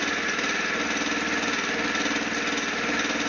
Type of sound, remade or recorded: recorded